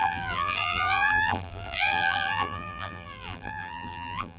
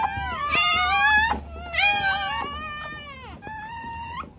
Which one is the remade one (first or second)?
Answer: first